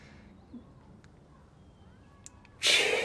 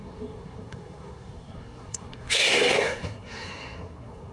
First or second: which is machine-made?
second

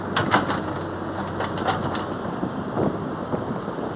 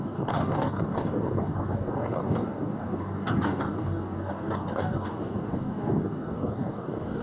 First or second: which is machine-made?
second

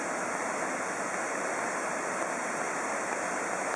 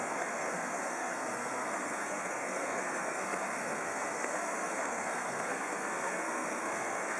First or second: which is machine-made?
second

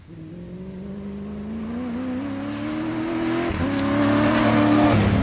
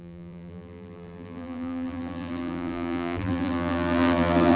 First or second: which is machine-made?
second